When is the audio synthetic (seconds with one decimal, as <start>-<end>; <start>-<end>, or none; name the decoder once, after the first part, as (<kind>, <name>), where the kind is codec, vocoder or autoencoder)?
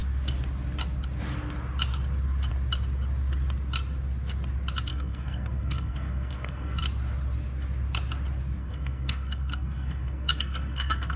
4.9-6.8 (codec, SNAC); 8.6-11.2